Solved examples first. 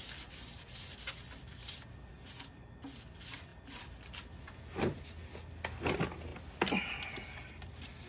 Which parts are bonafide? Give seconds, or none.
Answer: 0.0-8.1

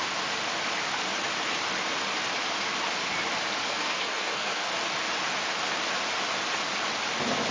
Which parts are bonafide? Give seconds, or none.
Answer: 0.0-3.6; 4.7-7.5

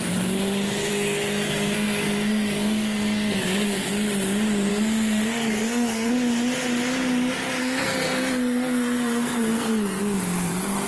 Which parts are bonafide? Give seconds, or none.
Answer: 0.0-0.9; 3.9-4.7; 6.1-7.6; 10.0-10.9

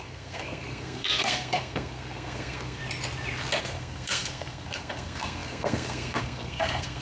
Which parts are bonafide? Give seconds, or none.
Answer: 2.8-3.6